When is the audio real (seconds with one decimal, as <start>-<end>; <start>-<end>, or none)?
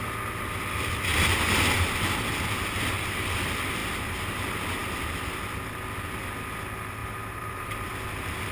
0.0-7.0; 7.9-8.5